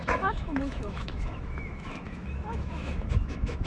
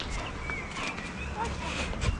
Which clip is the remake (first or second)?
first